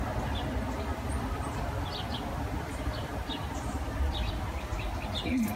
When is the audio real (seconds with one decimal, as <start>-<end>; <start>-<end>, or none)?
0.0-0.9; 4.3-5.6